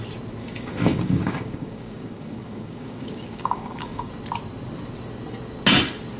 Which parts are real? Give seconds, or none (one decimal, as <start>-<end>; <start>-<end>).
0.0-0.4; 4.1-6.2